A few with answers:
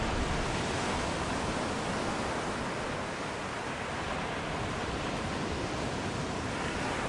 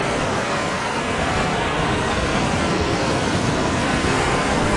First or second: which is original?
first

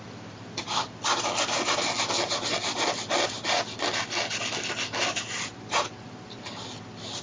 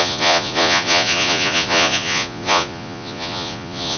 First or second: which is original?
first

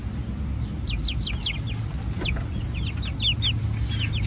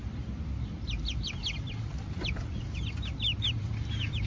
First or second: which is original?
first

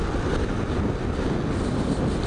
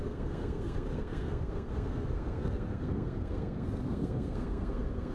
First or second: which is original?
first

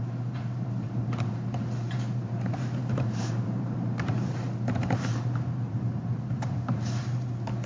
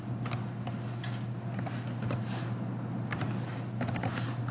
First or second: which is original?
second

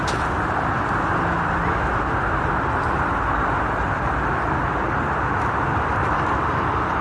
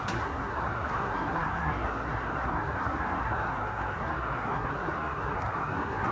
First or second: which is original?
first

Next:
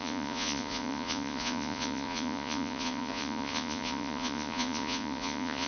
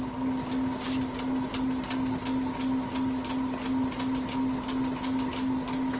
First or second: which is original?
second